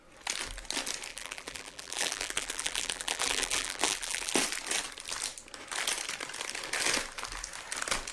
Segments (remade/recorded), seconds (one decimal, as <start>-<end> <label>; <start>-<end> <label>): 0.0-1.1 recorded; 1.1-4.3 remade; 4.3-8.1 recorded